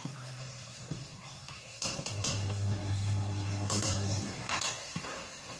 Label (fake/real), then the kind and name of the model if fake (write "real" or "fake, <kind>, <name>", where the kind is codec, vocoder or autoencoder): fake, codec, SNAC